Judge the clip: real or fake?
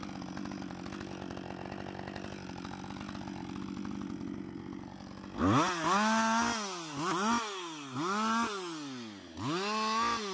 real